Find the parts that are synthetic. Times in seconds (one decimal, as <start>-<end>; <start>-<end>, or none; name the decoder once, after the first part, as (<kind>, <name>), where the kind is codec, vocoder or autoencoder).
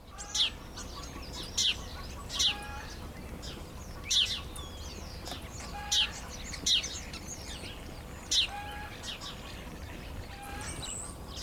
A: 1.6-2.4 (vocoder, BigVGAN v2); 9.1-11.0